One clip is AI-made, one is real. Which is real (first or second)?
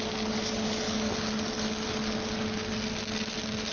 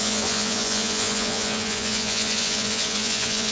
first